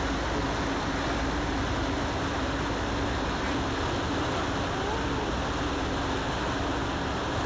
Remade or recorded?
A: recorded